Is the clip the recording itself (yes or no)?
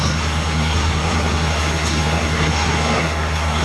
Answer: no